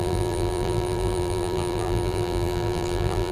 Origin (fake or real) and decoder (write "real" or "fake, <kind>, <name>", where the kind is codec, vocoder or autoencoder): fake, vocoder, BigVGAN v2